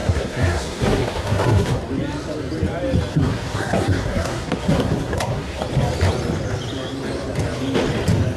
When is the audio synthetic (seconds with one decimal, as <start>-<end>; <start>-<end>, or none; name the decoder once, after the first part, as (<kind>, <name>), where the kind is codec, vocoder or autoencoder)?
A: 0.0-1.8 (codec, SNAC); 3.1-5.6